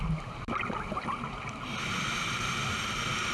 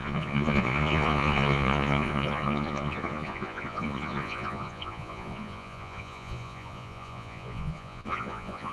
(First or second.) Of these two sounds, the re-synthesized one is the second